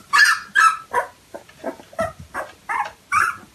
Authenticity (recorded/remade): recorded